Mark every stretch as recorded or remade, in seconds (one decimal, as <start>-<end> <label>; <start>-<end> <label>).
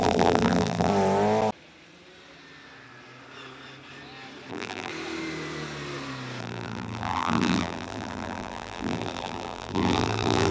0.0-0.9 remade; 0.9-4.5 recorded; 4.5-4.9 remade; 4.9-6.4 recorded; 6.4-10.5 remade